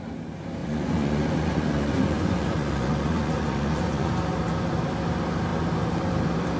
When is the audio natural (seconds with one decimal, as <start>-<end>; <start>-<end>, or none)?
0.0-0.6; 4.1-6.6